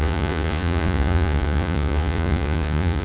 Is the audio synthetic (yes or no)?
yes